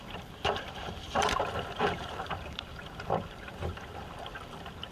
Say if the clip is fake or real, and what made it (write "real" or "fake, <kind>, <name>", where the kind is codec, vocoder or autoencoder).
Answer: fake, vocoder, BigVGAN v2